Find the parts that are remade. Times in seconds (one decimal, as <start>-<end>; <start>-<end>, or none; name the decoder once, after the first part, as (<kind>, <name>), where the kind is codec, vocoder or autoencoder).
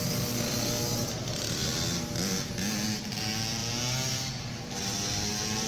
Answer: none